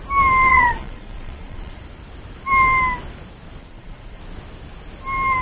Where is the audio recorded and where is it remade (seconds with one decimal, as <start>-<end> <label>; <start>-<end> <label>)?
0.0-0.5 recorded; 0.5-1.8 remade; 1.8-3.6 recorded; 3.6-4.2 remade; 4.2-5.4 recorded